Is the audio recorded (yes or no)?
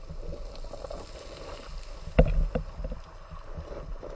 yes